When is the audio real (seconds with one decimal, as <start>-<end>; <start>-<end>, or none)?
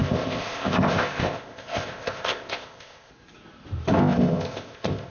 3.1-4.0